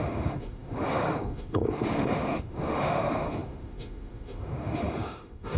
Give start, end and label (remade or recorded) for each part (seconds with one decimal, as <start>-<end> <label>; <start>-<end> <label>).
0.0-5.6 remade